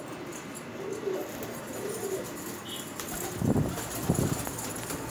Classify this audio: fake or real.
real